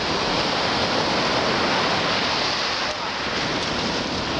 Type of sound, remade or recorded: recorded